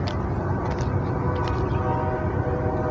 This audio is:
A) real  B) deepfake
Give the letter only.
A